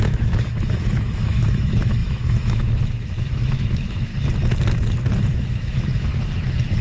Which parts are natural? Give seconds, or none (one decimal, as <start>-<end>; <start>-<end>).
4.1-5.3; 6.1-6.8